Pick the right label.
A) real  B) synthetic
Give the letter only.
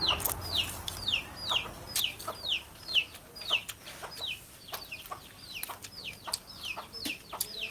A